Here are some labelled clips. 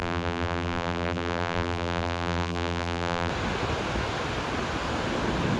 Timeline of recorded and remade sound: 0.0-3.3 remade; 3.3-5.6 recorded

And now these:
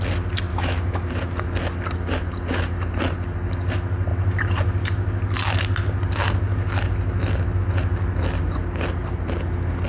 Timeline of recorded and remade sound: 0.0-0.5 recorded; 0.5-1.1 remade; 1.1-9.9 recorded

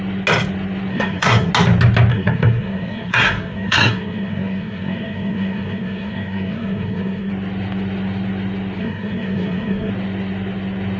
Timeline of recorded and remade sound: 0.0-0.9 recorded; 0.9-1.5 remade; 1.5-2.1 recorded; 2.1-7.3 remade; 7.3-8.8 recorded; 8.8-9.9 remade; 9.9-11.0 recorded

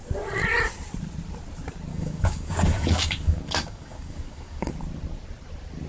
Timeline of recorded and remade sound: 0.0-1.9 recorded; 1.9-4.7 remade; 4.7-5.9 recorded